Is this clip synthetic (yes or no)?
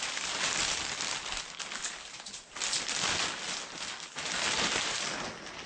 no